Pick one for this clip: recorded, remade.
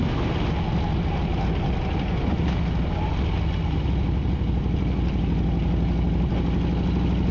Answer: recorded